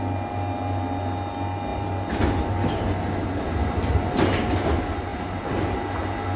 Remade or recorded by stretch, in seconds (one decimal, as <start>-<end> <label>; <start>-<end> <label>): 0.0-6.4 recorded